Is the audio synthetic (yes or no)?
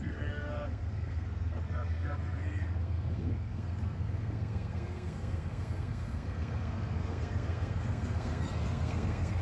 yes